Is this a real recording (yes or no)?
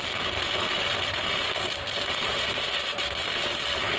yes